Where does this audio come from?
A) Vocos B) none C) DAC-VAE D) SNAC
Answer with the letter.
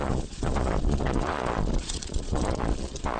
A